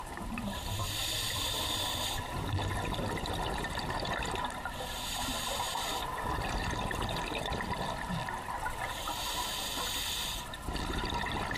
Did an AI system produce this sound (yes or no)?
yes